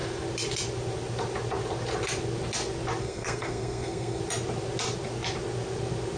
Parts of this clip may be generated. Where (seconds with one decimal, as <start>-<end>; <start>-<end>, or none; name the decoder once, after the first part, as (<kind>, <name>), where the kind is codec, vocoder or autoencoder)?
3.0-4.2 (codec, SNAC)

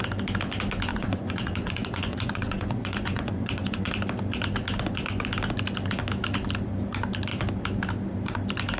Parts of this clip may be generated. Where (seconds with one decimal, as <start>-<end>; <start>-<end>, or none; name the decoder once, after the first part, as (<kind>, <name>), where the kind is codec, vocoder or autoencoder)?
0.9-3.9 (vocoder, Vocos)

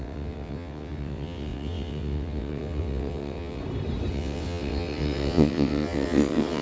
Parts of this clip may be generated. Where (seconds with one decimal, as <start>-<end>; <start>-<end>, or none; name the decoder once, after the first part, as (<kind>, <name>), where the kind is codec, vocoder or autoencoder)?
0.0-3.6 (vocoder, WaveNeXt); 4.1-6.6

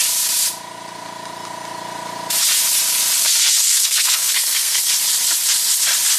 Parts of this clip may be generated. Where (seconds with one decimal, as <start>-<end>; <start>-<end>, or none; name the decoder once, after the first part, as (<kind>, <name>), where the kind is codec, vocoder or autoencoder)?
3.2-4.8 (codec, SNAC)

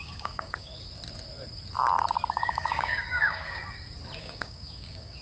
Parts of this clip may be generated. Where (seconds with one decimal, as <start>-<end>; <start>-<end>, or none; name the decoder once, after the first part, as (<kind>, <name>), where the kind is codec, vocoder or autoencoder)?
0.0-0.7 (codec, DAC); 2.3-3.6; 4.2-5.2